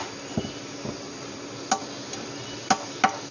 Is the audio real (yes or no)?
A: yes